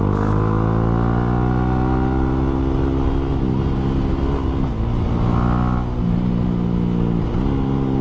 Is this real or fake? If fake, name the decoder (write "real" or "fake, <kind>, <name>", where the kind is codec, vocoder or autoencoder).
real